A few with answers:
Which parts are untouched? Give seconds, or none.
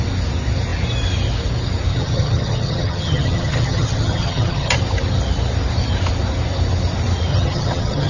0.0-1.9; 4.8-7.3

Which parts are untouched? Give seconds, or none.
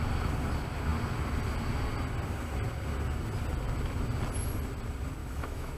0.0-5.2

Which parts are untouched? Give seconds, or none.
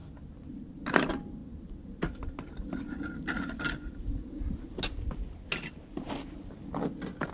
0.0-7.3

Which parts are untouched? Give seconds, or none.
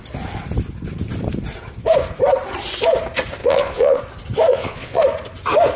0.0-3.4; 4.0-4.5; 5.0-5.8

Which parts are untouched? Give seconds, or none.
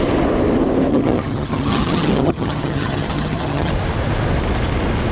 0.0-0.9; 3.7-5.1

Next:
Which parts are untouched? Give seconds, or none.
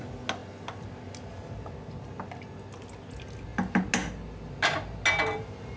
0.0-5.8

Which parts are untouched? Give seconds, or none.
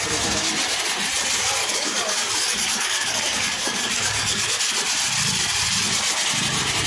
0.0-1.6; 4.7-6.9